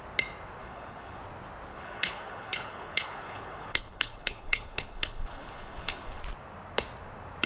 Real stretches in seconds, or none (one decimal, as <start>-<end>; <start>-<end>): 0.0-0.6; 1.2-1.7; 6.2-7.5